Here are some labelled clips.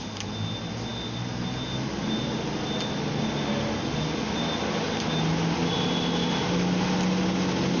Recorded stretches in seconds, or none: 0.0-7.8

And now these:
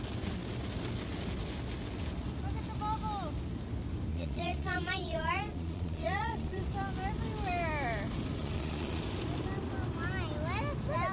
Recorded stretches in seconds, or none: 0.0-4.1; 6.6-8.4; 9.0-11.1

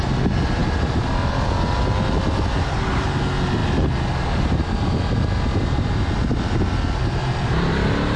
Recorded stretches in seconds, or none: 0.0-0.6; 1.3-7.2; 7.7-8.2

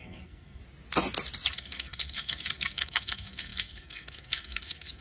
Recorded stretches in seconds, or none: 0.6-1.5

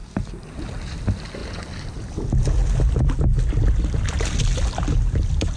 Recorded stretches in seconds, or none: 0.0-5.6